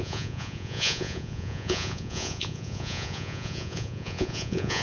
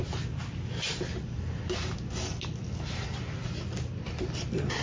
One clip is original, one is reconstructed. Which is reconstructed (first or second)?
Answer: first